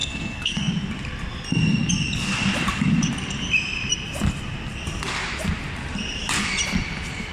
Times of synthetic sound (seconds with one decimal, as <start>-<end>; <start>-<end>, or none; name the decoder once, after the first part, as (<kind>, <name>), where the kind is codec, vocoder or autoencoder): 0.0-0.7 (codec, SNAC)